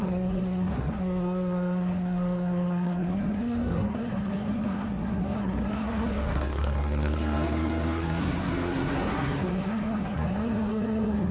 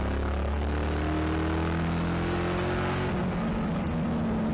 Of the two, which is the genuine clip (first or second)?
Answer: second